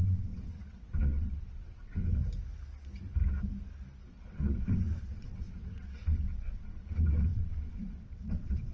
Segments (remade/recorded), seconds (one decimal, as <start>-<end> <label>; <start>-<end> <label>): 0.0-2.2 remade; 2.2-4.1 recorded; 4.1-8.7 remade